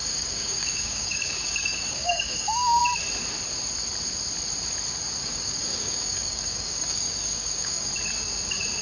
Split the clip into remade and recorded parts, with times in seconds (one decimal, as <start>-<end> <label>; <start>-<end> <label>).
0.0-2.8 remade; 2.8-5.2 recorded; 5.2-7.9 remade; 7.9-8.8 recorded